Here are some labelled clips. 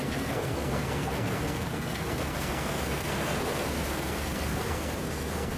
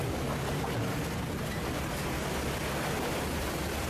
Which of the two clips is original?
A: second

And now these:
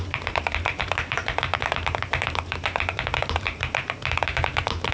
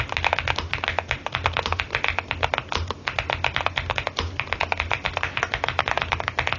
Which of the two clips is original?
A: second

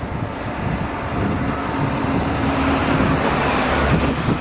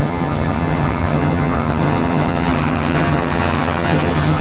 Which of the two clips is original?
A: first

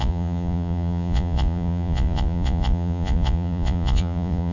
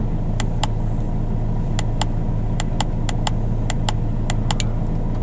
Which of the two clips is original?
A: second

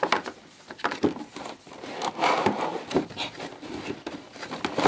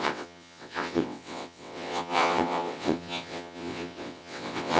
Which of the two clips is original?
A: first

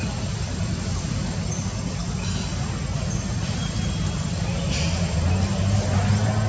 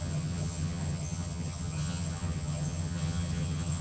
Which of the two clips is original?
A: first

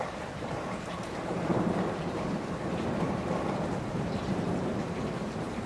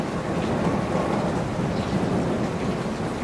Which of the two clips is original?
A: second